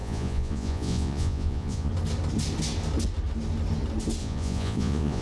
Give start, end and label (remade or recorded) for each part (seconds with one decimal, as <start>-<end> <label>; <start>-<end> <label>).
0.0-1.9 remade; 1.9-4.2 recorded; 4.2-5.2 remade

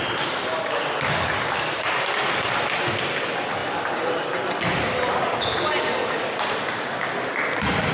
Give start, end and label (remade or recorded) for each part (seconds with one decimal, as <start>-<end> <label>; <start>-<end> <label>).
0.0-7.9 recorded